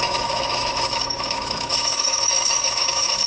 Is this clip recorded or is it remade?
remade